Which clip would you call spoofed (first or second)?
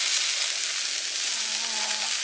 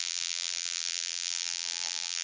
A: second